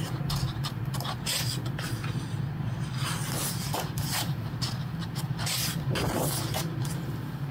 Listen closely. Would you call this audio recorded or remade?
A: recorded